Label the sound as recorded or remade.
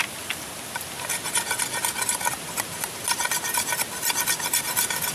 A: recorded